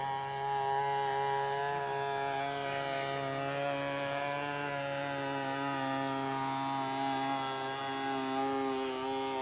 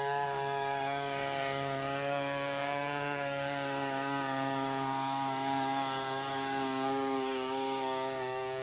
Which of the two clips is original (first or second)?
first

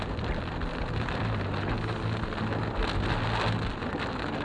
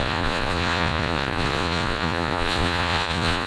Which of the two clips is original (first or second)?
first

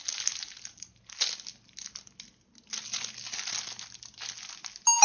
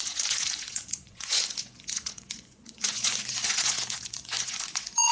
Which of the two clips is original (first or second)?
first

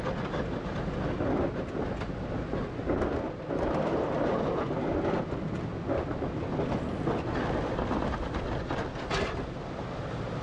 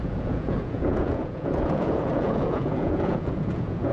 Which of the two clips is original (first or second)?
first